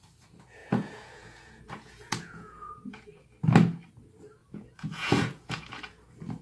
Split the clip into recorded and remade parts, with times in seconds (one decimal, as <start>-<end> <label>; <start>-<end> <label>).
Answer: 0.0-0.6 recorded; 0.6-3.2 remade; 3.2-4.4 recorded; 4.4-5.8 remade; 5.8-6.4 recorded